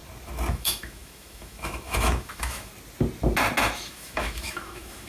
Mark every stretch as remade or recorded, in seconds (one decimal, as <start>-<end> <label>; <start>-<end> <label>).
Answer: 0.0-0.5 recorded; 0.5-2.7 remade; 2.7-3.6 recorded; 3.6-5.1 remade